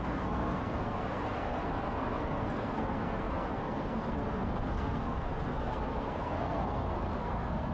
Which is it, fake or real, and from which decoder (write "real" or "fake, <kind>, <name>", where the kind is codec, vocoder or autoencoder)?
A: fake, codec, SNAC